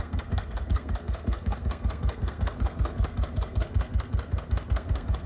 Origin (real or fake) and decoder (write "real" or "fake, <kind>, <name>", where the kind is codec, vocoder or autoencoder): fake, codec, SNAC